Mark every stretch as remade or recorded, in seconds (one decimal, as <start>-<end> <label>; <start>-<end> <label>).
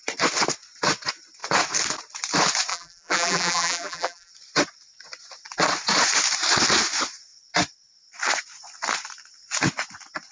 0.0-2.7 recorded; 2.7-4.3 remade; 4.3-10.3 recorded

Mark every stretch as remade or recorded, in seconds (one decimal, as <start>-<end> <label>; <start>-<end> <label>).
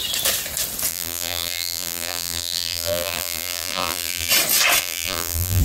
0.0-0.9 recorded; 0.9-4.3 remade; 4.3-4.8 recorded; 4.8-5.6 remade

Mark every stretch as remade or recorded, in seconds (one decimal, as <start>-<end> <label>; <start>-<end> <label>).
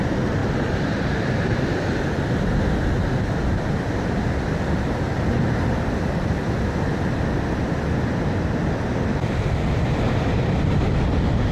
0.0-11.5 recorded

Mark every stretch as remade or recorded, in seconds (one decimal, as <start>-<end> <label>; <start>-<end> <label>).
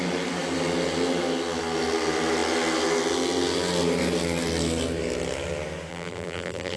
0.0-5.9 recorded; 5.9-6.8 remade